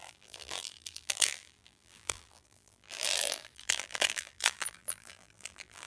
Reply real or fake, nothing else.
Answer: fake